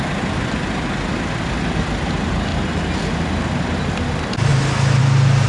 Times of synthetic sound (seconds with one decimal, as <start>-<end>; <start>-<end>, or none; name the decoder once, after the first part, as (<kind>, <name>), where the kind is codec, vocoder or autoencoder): none